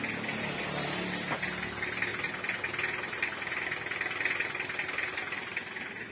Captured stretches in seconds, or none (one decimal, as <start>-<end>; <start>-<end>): 0.0-6.1